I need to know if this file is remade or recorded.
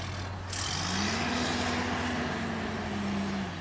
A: recorded